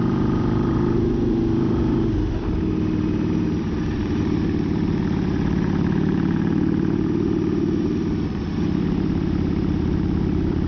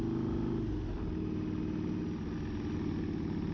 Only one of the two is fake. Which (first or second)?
first